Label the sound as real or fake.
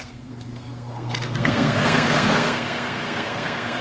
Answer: fake